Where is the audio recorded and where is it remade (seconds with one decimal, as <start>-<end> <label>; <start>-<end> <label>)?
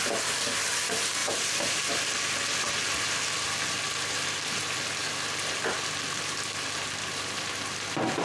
0.0-1.2 recorded; 1.2-1.9 remade; 1.9-8.2 recorded